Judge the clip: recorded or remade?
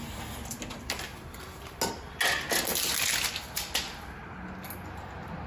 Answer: recorded